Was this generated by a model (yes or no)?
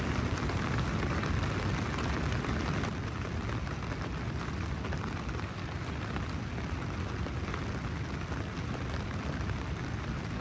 no